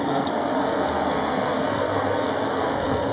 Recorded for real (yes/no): no